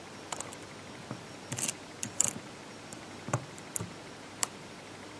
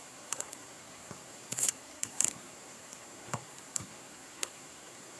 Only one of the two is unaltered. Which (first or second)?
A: first